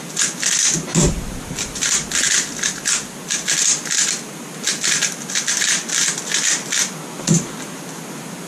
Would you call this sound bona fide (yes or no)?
yes